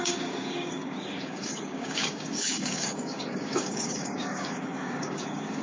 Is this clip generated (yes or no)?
yes